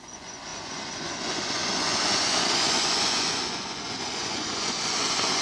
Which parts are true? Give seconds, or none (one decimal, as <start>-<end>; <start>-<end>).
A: none